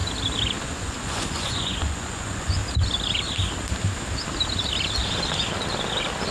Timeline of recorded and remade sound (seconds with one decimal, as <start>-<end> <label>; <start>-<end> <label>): 0.0-0.6 recorded; 0.6-2.6 remade; 2.6-6.3 recorded